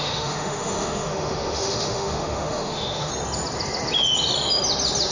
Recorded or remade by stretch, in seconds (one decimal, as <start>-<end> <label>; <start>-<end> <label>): 0.0-3.1 remade; 3.1-5.1 recorded